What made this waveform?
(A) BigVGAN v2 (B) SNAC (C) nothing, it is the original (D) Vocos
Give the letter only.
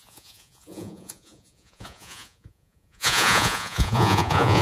D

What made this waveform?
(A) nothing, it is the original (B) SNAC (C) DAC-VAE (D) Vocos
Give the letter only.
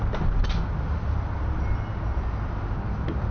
A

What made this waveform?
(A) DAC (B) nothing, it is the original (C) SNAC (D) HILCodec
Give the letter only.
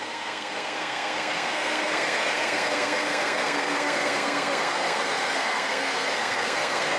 C